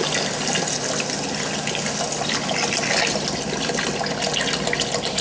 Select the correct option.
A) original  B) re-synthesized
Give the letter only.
A